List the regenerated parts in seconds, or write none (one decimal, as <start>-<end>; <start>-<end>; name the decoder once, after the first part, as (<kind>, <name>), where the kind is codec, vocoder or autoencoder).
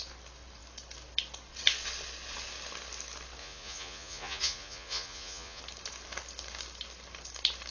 3.4-5.6 (vocoder, Vocos)